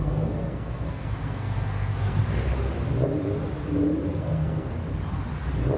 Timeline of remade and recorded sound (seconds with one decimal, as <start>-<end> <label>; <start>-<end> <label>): 0.0-2.2 remade; 2.2-4.1 recorded; 4.1-4.8 remade; 4.8-5.8 recorded